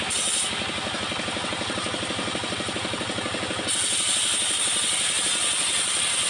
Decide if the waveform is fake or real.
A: real